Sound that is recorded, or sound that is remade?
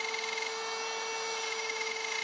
recorded